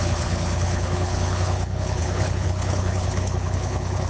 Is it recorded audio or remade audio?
remade